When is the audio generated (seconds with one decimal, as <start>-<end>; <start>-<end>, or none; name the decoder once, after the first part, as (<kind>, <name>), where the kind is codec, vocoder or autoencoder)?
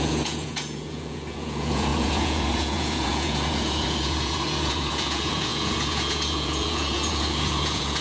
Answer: 0.0-8.0 (vocoder, Vocos)